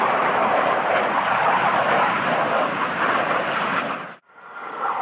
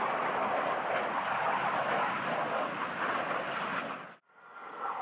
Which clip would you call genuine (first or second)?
second